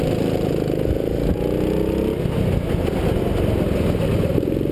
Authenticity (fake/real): real